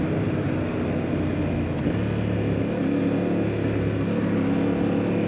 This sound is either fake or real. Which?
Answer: real